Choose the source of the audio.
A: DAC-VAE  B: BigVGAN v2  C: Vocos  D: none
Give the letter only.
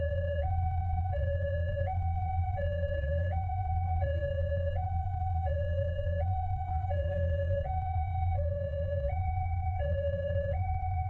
C